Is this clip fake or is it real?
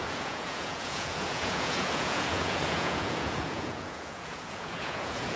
fake